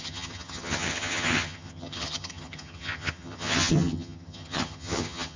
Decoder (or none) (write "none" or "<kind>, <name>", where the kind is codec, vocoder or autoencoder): vocoder, HiFi-GAN